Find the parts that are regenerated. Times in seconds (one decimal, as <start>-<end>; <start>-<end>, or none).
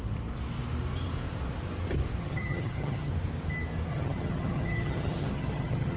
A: 2.2-3.1; 3.9-6.0